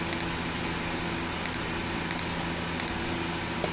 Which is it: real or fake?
real